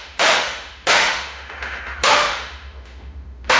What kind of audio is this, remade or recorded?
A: remade